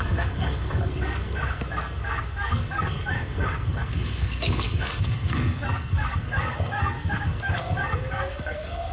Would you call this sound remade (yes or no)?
yes